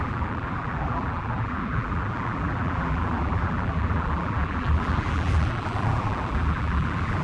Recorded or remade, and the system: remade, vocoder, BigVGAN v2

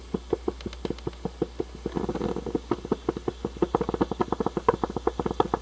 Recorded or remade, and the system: recorded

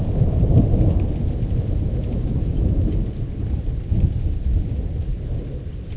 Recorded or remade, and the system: recorded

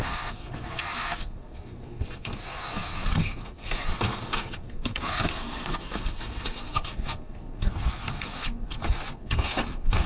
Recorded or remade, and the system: remade, codec, SNAC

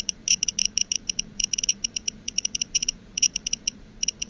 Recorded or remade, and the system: remade, vocoder, Vocos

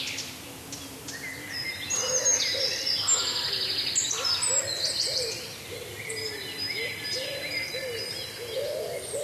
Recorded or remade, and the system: recorded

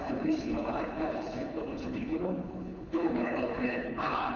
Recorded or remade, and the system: remade, codec, HILCodec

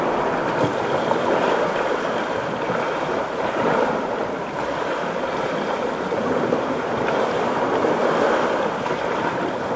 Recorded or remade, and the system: recorded